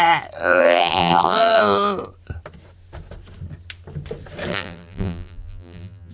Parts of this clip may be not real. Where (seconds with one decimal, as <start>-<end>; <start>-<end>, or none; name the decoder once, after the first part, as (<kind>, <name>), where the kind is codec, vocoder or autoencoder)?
0.4-1.6 (vocoder, BigVGAN v2); 4.5-6.1